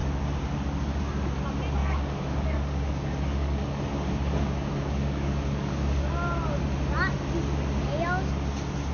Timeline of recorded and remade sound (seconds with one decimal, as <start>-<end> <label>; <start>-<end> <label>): 0.0-1.8 recorded; 1.8-6.1 remade; 6.1-8.9 recorded